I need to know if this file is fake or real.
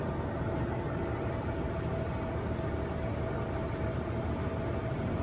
real